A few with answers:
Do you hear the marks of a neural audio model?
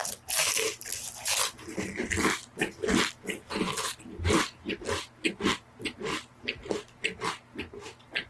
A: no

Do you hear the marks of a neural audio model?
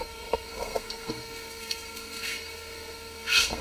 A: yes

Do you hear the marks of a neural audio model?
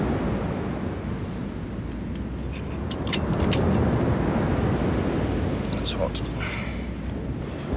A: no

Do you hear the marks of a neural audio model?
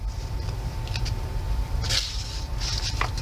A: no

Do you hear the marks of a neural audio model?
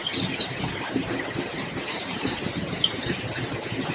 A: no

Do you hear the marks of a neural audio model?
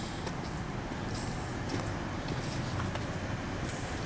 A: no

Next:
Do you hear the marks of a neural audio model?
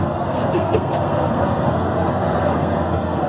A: yes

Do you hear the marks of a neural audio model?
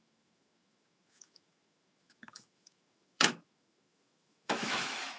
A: yes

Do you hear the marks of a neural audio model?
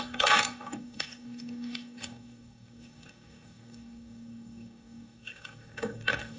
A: yes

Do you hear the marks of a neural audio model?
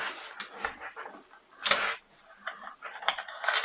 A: no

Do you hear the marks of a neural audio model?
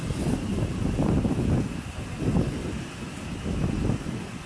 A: no